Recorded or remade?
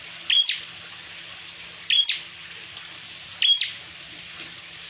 recorded